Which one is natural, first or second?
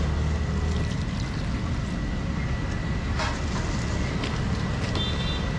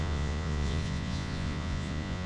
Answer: first